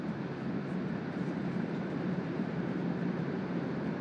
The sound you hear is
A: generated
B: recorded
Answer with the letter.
A